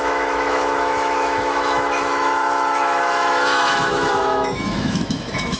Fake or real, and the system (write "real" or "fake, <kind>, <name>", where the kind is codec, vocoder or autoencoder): fake, autoencoder, DAC-VAE